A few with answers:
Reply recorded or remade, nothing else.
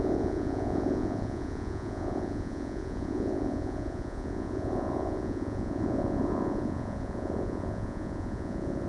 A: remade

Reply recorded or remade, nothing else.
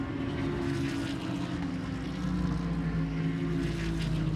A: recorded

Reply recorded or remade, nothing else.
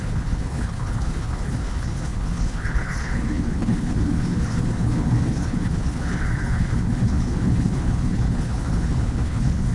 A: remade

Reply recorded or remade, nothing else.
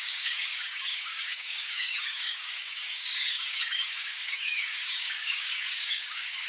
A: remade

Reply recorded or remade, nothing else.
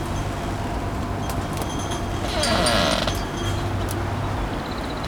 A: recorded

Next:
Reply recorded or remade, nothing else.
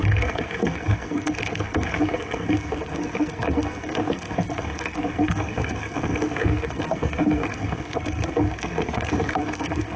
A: remade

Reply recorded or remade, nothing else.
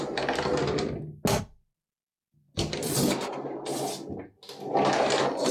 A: recorded